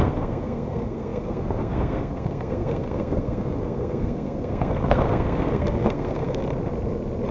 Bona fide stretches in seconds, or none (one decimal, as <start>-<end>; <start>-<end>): 6.4-7.3